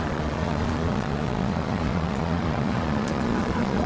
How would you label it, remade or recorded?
remade